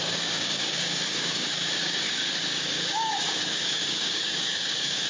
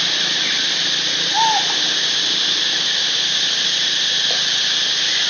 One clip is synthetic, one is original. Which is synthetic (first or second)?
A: first